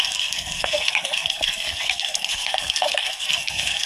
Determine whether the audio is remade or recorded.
remade